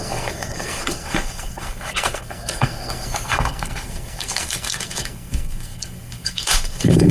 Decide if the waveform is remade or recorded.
remade